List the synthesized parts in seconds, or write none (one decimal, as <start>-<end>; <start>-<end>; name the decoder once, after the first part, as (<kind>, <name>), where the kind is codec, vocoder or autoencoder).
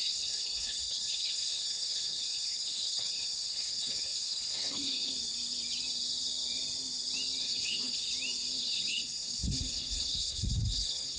0.0-5.1 (codec, HILCodec); 7.4-8.0; 8.6-11.2